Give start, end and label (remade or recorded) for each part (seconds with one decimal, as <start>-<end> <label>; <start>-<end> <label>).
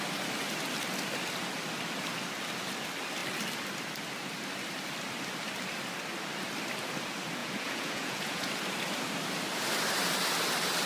0.0-7.4 recorded; 7.4-8.5 remade; 8.5-10.9 recorded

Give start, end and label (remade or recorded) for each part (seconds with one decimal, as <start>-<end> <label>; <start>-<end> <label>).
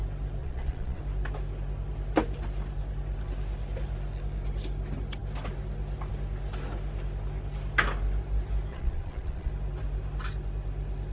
0.0-0.4 recorded; 0.4-1.0 remade; 1.0-8.7 recorded; 8.7-9.5 remade; 9.5-11.1 recorded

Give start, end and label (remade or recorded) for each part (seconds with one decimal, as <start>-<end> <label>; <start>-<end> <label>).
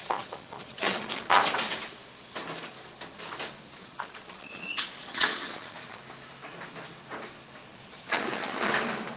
0.0-1.4 remade; 1.4-3.8 recorded; 3.8-6.0 remade; 6.0-7.6 recorded; 7.6-8.7 remade; 8.7-9.2 recorded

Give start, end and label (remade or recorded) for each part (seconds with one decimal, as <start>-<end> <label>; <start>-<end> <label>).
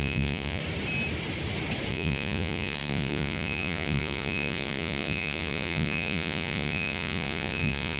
0.0-0.6 remade; 0.6-1.9 recorded; 1.9-8.0 remade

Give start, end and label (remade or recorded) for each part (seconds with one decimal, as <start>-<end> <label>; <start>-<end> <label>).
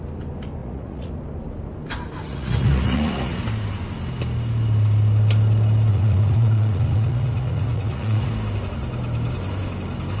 0.0-0.6 recorded; 0.6-1.1 remade; 1.1-2.3 recorded; 2.3-3.4 remade; 3.4-5.9 recorded; 5.9-8.3 remade; 8.3-10.2 recorded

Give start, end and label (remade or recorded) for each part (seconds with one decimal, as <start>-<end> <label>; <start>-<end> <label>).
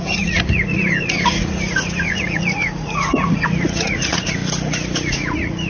0.0-4.4 remade; 4.4-5.1 recorded; 5.1-5.7 remade